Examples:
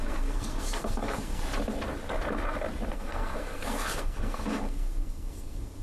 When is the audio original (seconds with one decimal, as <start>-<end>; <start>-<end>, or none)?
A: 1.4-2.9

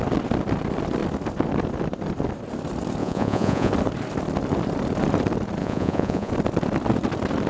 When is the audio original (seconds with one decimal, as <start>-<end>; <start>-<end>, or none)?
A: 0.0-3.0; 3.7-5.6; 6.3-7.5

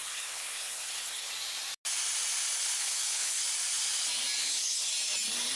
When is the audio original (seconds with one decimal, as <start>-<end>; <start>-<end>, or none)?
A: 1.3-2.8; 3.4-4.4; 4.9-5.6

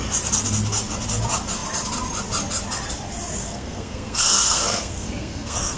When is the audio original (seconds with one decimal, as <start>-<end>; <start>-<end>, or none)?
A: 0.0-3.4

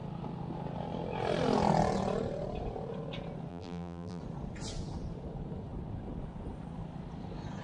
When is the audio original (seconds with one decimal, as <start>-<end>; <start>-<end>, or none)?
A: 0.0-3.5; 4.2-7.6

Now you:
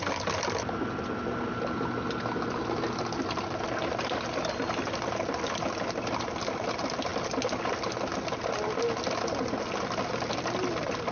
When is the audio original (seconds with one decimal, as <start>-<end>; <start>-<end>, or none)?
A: 0.0-11.1

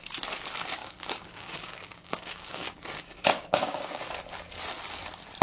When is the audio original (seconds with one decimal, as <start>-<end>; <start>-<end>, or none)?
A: 0.0-0.8; 4.0-5.4